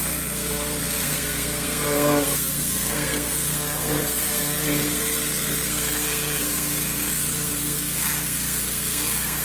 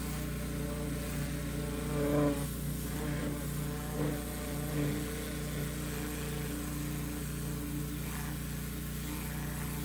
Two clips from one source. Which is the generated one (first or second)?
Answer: first